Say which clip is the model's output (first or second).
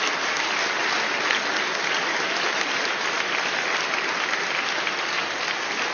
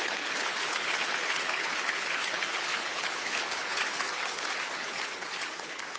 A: second